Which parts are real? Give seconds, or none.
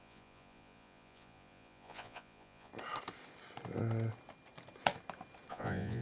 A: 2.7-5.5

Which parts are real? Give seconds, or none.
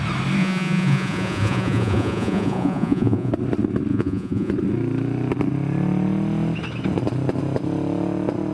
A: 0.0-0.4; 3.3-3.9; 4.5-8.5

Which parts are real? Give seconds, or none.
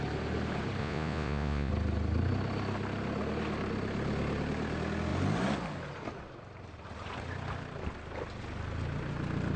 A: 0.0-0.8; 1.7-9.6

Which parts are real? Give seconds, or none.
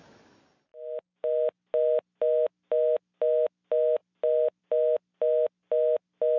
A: 0.0-6.4